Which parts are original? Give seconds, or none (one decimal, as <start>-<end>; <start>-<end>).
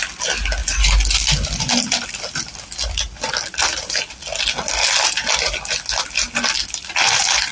0.0-7.5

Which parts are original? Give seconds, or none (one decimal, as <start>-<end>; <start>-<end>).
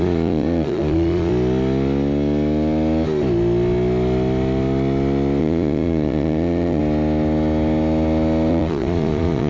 1.3-5.4; 6.8-8.5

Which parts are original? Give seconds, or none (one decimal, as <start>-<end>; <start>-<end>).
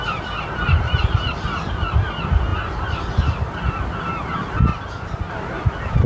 2.5-3.2; 4.7-5.3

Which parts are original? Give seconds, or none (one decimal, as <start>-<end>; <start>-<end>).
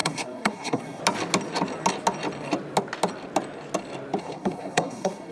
1.0-4.2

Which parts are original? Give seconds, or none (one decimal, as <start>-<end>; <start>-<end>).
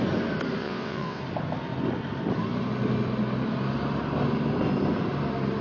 0.0-0.6; 1.2-5.6